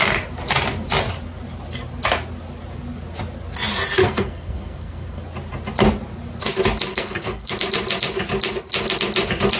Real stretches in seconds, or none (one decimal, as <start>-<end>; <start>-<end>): 0.0-4.0; 5.2-6.9; 7.5-9.6